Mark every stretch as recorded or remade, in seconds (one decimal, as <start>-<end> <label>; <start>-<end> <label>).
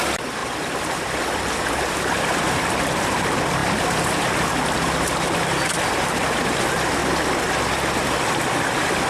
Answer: 0.0-7.0 remade; 7.0-8.4 recorded; 8.4-9.1 remade